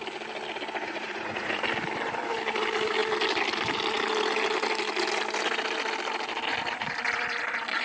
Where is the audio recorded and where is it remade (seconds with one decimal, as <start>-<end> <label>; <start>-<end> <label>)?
0.0-0.8 recorded; 0.8-1.6 remade; 1.6-7.8 recorded